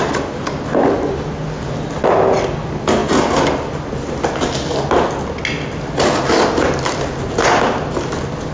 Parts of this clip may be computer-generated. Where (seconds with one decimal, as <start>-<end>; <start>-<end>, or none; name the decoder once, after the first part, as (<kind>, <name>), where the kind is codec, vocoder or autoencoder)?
none